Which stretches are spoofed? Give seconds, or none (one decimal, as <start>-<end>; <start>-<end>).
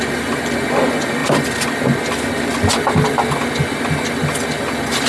none